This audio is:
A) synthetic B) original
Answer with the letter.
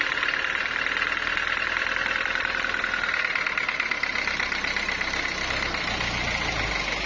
B